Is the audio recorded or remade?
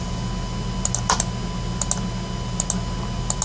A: recorded